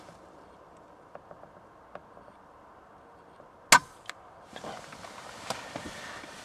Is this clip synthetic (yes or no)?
no